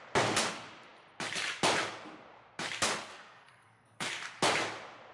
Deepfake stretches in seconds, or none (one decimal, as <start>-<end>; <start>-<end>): 3.1-4.1